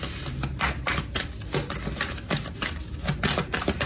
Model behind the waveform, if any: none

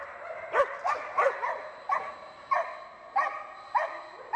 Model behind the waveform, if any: none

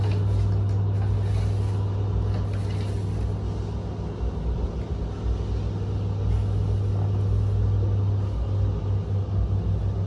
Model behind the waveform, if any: none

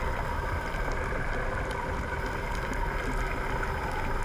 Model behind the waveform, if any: none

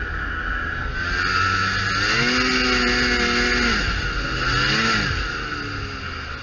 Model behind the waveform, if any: none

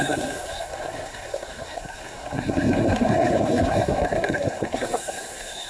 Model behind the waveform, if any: codec, SNAC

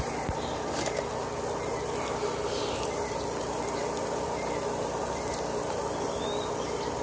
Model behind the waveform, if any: none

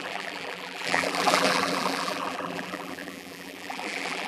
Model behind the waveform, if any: vocoder, BigVGAN v2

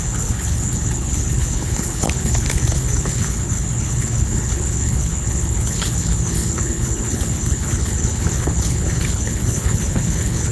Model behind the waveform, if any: codec, HILCodec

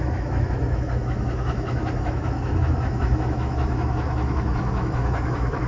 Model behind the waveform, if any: autoencoder, DAC-VAE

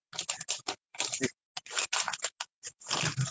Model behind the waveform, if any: none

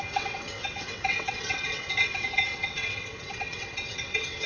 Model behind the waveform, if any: vocoder, WaveNeXt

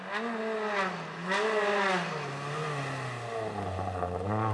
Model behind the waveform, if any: none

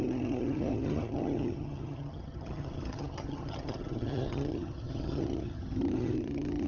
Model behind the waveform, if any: vocoder, HiFi-GAN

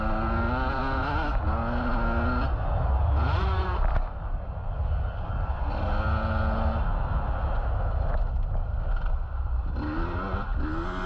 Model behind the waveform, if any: none